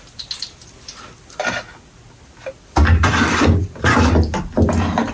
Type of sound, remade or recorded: recorded